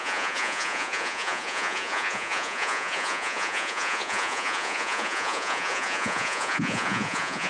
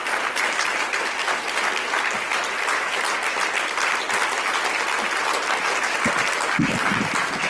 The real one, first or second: second